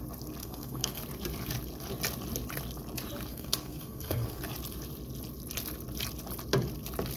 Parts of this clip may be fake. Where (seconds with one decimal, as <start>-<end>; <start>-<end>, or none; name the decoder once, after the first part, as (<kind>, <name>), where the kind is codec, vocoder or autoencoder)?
0.4-1.0 (codec, SNAC); 3.3-4.4